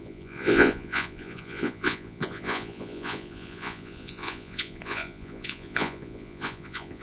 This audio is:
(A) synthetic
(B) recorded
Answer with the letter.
A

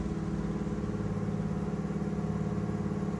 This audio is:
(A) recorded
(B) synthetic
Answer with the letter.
A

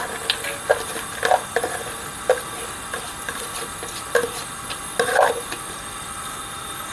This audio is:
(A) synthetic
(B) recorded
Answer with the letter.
B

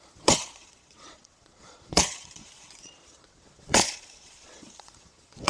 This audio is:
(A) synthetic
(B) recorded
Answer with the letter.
A